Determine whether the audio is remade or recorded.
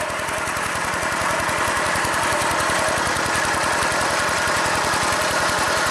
recorded